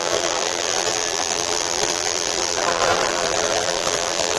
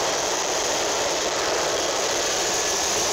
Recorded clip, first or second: second